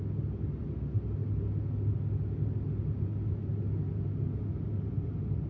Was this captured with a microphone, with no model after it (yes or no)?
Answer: yes